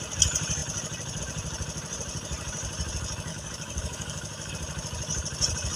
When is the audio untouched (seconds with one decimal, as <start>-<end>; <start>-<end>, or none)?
0.0-3.3; 4.5-5.8